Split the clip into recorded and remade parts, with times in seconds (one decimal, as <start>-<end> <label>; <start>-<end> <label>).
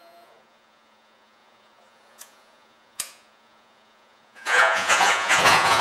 0.0-5.8 remade